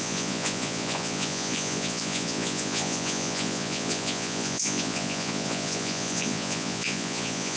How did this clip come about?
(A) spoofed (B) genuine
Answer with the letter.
A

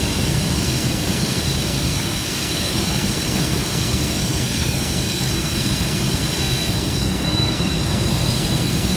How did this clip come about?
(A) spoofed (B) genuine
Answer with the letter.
A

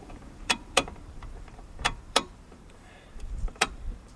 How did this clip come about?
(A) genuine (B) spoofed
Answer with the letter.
B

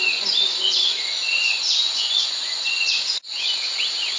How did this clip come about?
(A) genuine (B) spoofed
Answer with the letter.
B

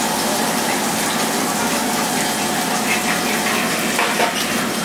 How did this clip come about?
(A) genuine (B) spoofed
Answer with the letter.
A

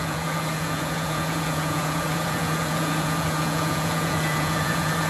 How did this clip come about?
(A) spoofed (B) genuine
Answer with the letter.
A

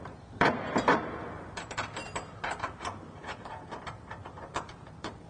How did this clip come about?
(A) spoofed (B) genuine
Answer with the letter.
A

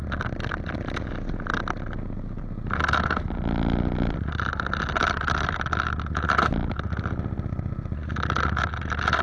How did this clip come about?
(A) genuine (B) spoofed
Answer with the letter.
A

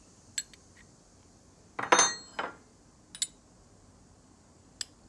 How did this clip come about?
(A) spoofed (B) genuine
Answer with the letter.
B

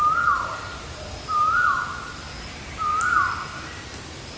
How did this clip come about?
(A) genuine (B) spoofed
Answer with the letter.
A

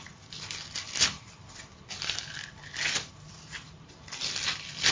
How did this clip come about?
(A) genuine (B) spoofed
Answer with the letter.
A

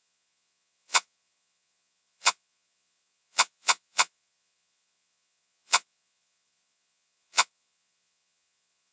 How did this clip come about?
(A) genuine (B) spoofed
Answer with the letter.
B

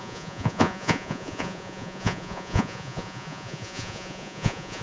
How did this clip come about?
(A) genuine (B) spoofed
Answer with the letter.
B